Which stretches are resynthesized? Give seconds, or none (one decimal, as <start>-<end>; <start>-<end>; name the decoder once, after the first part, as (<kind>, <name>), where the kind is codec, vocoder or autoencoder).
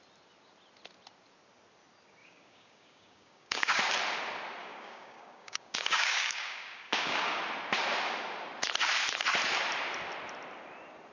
2.2-3.8 (codec, DAC); 4.6-7.4